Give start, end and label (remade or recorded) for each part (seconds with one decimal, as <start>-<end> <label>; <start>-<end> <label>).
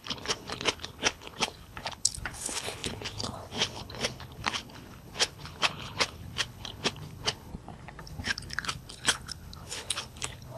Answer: 0.0-7.5 remade; 7.5-8.0 recorded; 8.0-10.6 remade